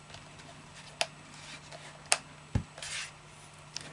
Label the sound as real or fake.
real